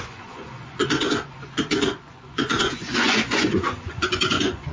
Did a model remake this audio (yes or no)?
yes